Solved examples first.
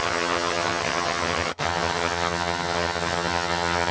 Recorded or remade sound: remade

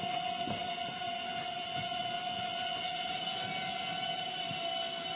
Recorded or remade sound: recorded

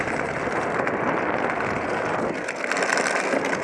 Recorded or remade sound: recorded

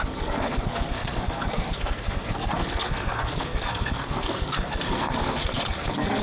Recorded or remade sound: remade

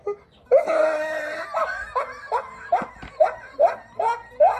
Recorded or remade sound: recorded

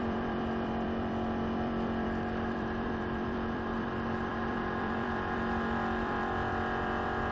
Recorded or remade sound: remade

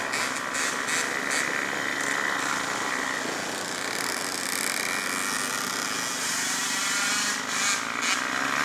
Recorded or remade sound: recorded